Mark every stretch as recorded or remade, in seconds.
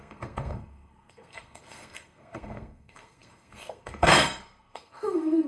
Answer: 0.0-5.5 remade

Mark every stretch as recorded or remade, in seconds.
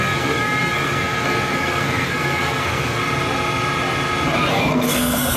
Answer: 0.0-3.0 remade; 3.0-4.5 recorded; 4.5-5.4 remade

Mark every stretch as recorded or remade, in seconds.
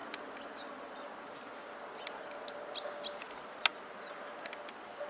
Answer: 0.0-5.1 recorded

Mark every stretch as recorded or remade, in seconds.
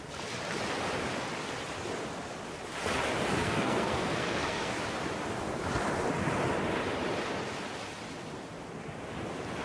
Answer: 0.0-3.4 recorded; 3.4-4.8 remade; 4.8-9.6 recorded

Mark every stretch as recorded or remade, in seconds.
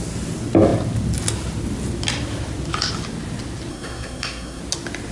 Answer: 0.0-3.7 recorded; 3.7-4.6 remade; 4.6-5.1 recorded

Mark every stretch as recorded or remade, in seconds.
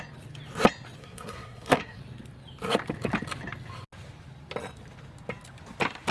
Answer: 0.0-1.0 recorded; 1.0-2.0 remade; 2.0-6.1 recorded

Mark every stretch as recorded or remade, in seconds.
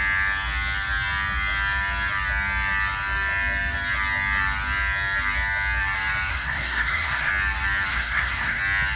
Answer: 0.0-6.3 recorded; 6.3-7.3 remade; 7.3-7.9 recorded; 7.9-8.6 remade; 8.6-9.0 recorded